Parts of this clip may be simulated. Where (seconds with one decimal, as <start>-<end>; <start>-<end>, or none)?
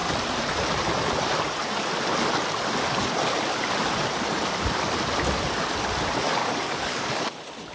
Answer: 6.4-7.3